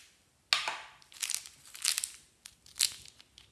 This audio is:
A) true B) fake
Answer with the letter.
A